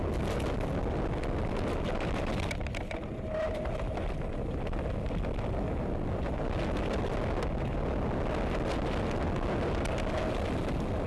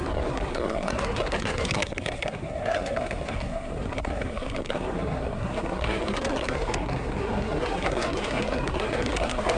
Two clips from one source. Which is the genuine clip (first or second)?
first